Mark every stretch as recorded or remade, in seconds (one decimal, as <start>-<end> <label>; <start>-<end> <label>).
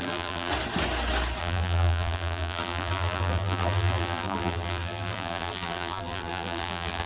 0.0-0.5 remade; 0.5-1.4 recorded; 1.4-7.1 remade